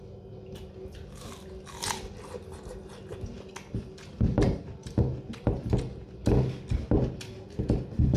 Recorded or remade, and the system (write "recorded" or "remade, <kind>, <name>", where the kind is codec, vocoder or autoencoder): recorded